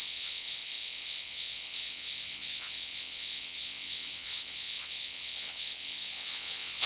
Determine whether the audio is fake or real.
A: fake